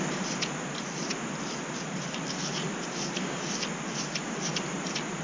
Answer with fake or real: real